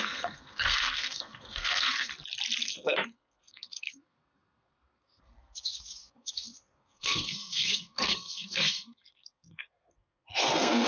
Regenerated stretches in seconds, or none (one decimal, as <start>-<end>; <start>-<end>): 0.0-2.1; 2.6-10.9